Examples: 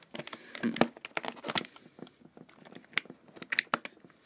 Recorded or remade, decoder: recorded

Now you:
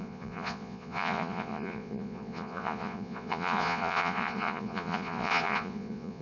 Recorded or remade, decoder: remade, vocoder, Vocos